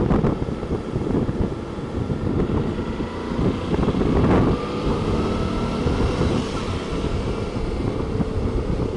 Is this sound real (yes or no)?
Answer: yes